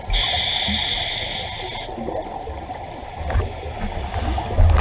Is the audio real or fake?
real